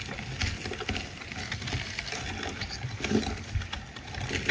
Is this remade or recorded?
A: recorded